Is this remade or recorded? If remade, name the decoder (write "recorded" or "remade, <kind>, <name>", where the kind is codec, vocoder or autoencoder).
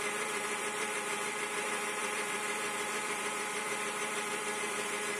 remade, vocoder, BigVGAN v2